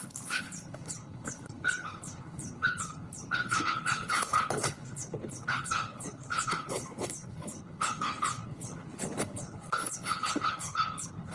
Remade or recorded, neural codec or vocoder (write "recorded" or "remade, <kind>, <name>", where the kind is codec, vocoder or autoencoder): remade, codec, HILCodec